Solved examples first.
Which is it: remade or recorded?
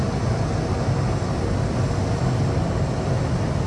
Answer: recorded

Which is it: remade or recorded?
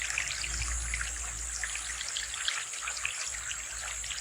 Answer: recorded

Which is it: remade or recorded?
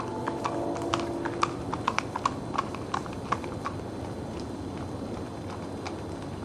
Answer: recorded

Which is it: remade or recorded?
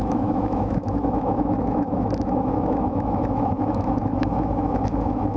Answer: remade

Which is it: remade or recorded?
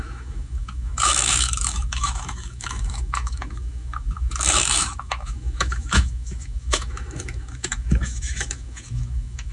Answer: remade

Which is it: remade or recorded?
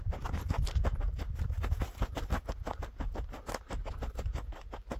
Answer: recorded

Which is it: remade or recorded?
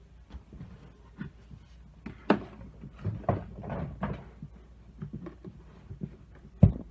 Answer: recorded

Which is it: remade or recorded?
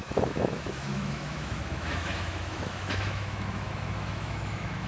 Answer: remade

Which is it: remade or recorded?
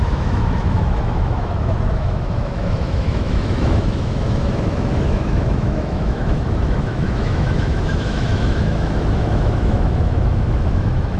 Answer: remade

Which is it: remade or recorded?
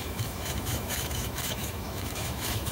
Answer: remade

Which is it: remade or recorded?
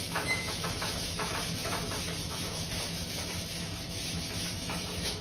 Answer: remade